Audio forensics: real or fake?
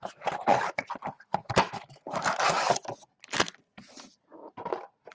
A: real